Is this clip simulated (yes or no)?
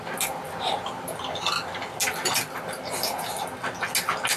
no